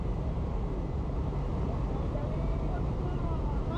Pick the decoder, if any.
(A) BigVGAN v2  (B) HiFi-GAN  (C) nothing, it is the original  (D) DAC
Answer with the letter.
A